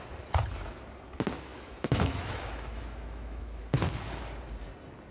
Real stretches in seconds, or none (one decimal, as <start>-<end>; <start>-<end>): 0.0-1.5; 3.6-5.1